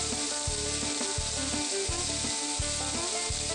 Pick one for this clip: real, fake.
real